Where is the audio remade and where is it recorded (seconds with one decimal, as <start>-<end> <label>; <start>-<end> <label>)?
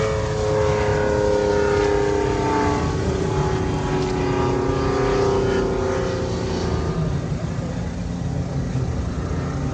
0.0-9.7 recorded